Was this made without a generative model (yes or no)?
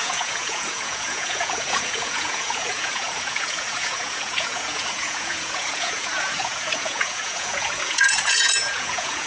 no